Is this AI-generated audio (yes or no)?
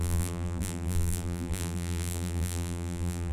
yes